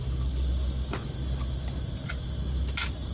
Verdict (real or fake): real